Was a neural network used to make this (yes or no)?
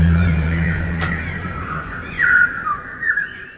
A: yes